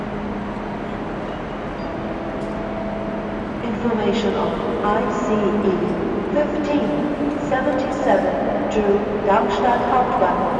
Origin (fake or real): real